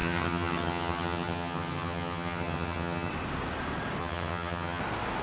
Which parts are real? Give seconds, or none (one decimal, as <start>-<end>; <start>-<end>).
3.1-4.0; 4.8-5.2

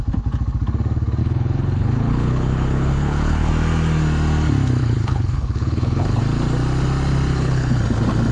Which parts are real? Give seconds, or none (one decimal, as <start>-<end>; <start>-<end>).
0.0-1.2; 3.5-4.8; 6.2-7.3; 7.8-8.3

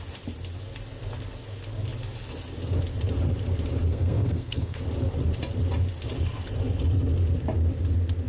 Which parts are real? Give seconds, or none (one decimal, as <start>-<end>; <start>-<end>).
0.0-3.9; 4.8-8.3

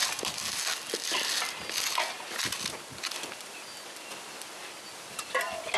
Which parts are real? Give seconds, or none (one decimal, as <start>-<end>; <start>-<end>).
0.0-5.8

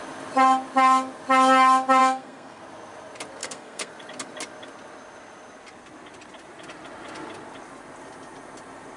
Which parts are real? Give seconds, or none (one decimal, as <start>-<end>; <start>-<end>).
0.0-2.0; 2.6-3.4; 3.9-9.0